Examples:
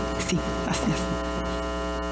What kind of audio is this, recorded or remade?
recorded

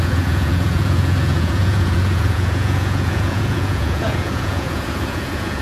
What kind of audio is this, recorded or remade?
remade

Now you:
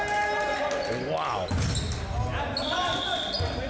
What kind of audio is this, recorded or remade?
recorded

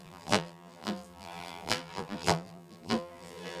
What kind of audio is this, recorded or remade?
remade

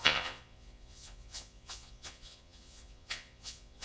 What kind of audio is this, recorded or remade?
remade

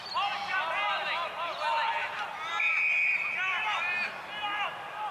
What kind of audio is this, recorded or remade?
recorded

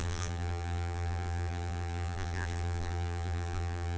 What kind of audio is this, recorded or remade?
remade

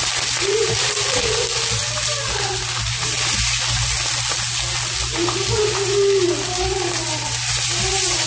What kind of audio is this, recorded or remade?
recorded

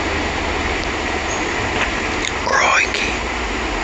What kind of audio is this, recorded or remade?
recorded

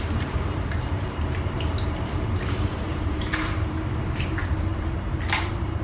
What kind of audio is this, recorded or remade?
remade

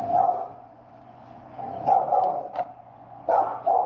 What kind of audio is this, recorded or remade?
remade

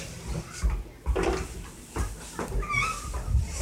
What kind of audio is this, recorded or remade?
recorded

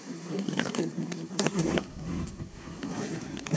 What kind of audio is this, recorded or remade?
remade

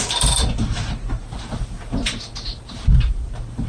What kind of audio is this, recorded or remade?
recorded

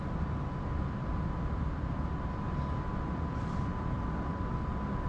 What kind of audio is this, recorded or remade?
recorded